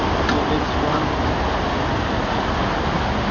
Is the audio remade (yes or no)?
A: no